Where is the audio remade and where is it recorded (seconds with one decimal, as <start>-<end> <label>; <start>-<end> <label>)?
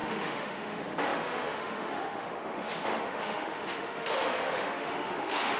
0.0-5.6 remade